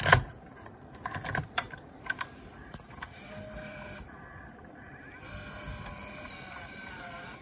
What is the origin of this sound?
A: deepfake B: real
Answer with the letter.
A